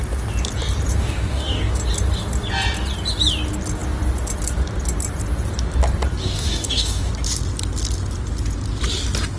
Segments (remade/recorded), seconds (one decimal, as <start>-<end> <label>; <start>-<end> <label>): 0.0-1.0 recorded; 1.0-1.7 remade; 1.7-6.2 recorded; 6.2-7.1 remade; 7.1-9.4 recorded